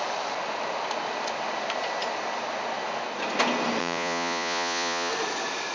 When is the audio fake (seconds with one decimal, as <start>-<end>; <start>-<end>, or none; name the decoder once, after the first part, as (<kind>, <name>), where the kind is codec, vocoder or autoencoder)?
3.8-5.1 (vocoder, Vocos)